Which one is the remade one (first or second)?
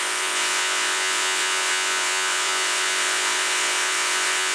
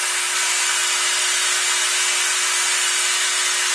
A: first